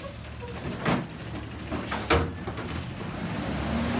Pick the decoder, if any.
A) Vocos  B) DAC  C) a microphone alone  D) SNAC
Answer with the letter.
C